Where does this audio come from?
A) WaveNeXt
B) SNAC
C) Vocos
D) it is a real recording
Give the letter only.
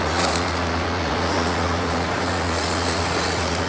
C